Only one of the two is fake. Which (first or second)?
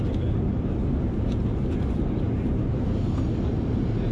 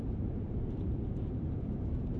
second